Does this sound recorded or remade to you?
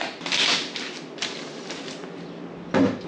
recorded